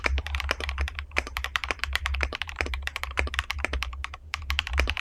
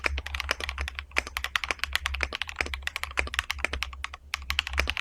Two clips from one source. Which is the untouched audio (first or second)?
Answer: second